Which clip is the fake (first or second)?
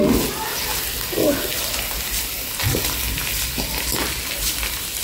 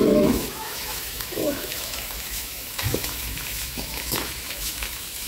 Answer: second